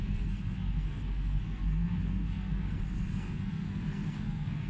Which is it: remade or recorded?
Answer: remade